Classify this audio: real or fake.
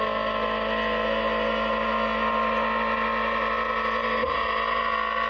real